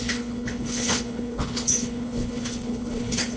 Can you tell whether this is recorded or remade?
remade